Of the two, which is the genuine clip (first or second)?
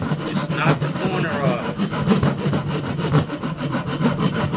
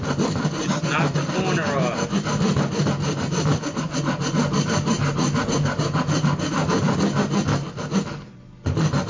second